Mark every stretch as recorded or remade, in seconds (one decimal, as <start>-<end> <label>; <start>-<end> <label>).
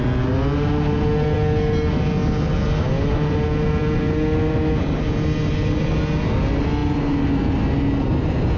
0.0-8.6 recorded